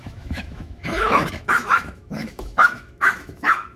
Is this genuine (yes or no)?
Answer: no